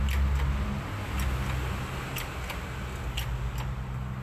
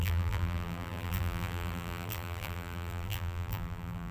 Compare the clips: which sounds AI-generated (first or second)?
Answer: second